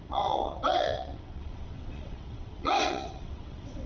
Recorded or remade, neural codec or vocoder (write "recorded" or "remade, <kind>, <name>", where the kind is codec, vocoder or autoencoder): remade, vocoder, WaveNeXt